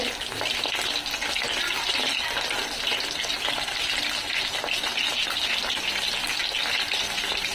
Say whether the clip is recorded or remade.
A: recorded